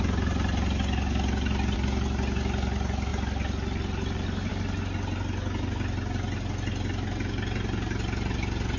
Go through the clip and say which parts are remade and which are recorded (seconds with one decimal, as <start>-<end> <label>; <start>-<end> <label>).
0.0-8.8 recorded